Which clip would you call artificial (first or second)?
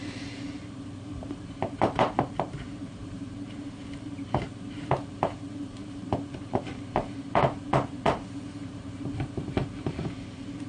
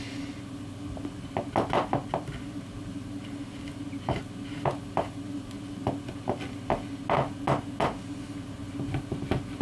first